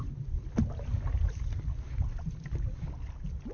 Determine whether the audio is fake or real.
real